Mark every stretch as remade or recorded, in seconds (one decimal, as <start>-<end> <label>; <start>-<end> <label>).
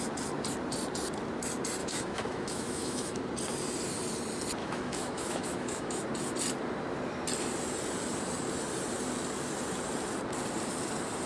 0.0-1.8 recorded; 1.8-3.2 remade; 3.2-4.6 recorded; 4.6-6.0 remade; 6.0-11.3 recorded